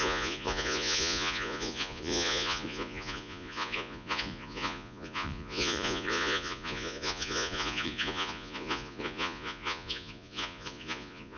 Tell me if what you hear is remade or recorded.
remade